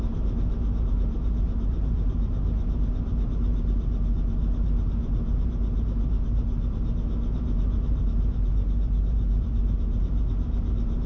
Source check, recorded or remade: remade